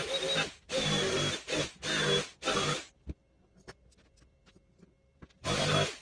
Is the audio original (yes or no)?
yes